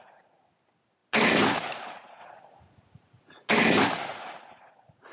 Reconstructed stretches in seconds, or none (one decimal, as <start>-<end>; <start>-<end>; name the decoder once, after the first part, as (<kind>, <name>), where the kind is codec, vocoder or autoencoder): 2.2-3.5 (vocoder, Vocos); 4.1-4.6